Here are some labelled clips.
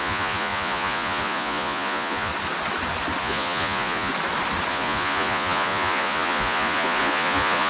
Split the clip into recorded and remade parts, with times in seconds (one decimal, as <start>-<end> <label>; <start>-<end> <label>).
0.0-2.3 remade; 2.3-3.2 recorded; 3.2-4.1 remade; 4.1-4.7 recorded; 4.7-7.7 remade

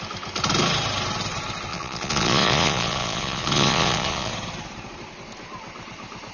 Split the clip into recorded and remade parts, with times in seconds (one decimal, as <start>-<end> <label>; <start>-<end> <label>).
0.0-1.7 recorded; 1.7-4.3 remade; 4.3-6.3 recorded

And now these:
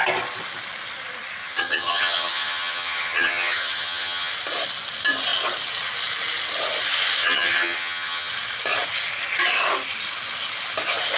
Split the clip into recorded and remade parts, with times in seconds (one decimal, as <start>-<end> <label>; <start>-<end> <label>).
0.0-1.4 recorded; 1.4-4.3 remade; 4.3-7.2 recorded; 7.2-8.3 remade; 8.3-11.2 recorded